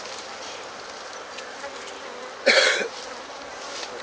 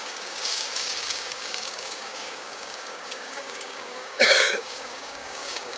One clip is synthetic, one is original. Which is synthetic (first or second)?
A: second